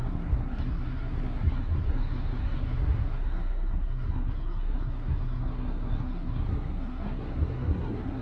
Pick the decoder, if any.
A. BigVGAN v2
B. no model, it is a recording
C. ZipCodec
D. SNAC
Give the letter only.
D